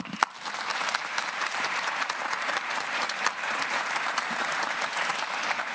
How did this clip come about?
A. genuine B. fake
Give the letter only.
B